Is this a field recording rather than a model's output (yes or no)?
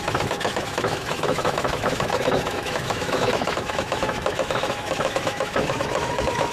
no